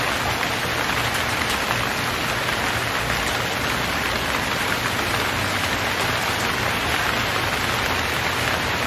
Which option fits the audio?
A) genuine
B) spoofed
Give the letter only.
A